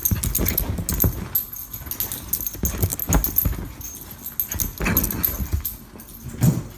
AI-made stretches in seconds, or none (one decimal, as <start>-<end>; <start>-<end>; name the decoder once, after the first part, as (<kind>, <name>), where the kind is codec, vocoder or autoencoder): none